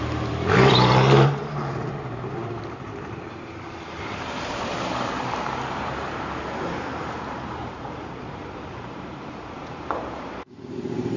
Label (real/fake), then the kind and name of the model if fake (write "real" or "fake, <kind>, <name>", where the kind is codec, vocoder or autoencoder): fake, vocoder, BigVGAN v2